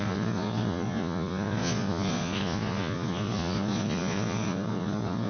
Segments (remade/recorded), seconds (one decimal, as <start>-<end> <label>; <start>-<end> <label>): 0.0-5.3 remade